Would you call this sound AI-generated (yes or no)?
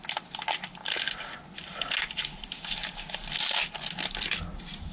no